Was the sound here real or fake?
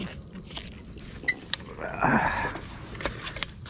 real